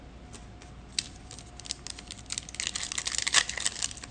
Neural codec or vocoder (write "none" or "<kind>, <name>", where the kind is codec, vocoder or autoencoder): none